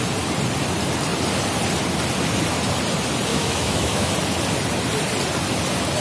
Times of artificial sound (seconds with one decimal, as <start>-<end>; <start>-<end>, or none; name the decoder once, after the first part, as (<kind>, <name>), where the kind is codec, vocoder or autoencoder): 3.3-4.1 (autoencoder, DAC-VAE)